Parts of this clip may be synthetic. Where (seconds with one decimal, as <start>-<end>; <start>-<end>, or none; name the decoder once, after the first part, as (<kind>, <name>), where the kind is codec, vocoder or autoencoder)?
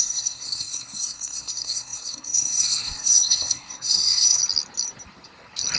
0.0-4.4 (codec, SNAC)